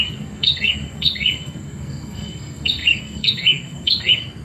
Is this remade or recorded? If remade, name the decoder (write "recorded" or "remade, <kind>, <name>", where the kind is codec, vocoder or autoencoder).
remade, codec, SNAC